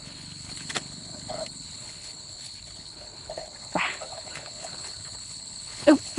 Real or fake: fake